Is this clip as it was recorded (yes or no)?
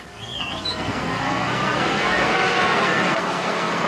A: no